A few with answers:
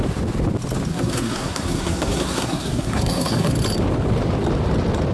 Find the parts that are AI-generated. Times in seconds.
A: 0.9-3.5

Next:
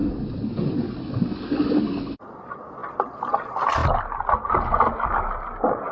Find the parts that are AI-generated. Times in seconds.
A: 0.0-1.8

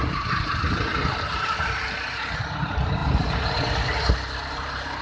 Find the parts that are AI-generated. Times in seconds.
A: 0.0-5.0

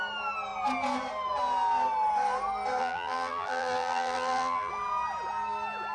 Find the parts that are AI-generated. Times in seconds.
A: 2.8-4.7

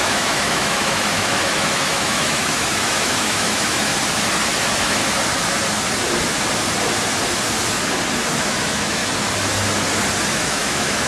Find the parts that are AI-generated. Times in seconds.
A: 0.0-3.9; 4.6-5.0; 8.4-9.0; 10.3-11.1

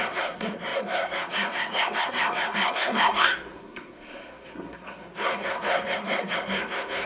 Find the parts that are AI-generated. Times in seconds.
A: 0.0-7.1